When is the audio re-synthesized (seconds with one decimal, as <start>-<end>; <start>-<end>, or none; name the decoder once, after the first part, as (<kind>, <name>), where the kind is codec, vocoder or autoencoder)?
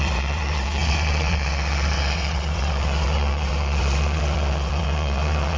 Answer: 0.0-5.6 (vocoder, WaveNeXt)